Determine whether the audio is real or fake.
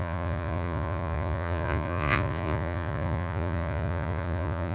fake